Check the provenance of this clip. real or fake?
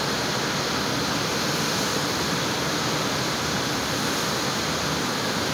real